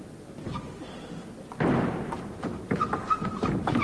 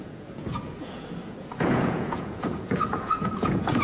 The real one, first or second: first